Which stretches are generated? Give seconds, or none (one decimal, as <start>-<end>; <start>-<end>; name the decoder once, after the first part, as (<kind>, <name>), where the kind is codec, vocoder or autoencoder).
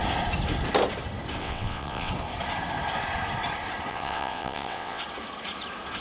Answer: 1.4-2.1 (vocoder, WaveNeXt); 3.9-5.0